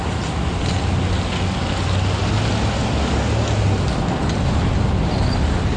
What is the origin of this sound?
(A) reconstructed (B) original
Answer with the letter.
B